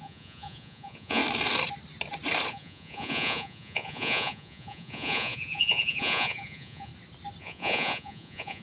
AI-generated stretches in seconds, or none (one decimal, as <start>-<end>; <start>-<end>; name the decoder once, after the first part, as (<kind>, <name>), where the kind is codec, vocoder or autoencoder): 0.0-1.2 (vocoder, Vocos); 2.5-6.9; 7.4-8.6